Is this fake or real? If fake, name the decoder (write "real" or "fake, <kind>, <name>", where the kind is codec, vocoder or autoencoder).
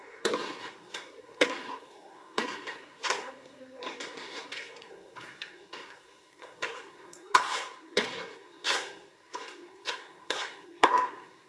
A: fake, codec, SNAC